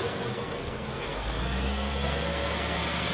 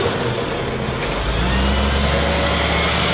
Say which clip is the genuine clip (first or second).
second